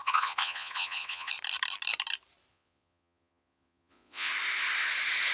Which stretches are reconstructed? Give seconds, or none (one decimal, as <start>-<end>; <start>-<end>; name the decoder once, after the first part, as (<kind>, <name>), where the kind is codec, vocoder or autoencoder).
0.0-1.3 (vocoder, Vocos); 2.5-4.3